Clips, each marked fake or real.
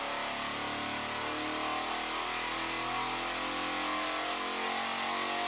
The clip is real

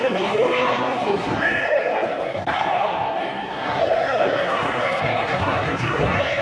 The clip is fake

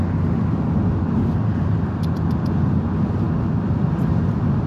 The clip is real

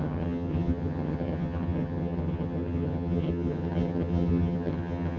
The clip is fake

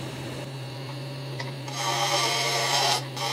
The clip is fake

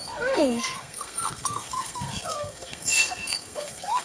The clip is fake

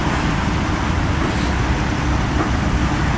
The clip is real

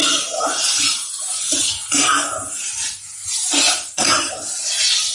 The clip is real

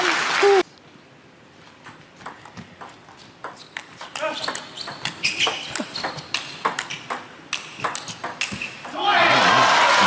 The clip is real